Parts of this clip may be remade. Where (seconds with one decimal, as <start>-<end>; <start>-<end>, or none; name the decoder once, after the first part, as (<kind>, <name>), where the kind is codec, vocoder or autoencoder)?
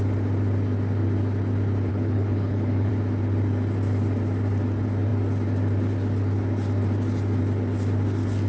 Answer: 1.9-2.9 (codec, HILCodec)